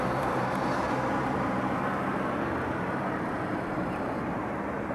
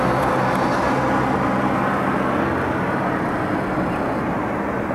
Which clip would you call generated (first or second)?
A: first